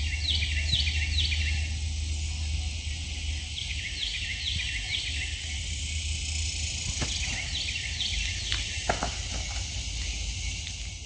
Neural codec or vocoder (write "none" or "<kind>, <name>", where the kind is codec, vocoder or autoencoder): none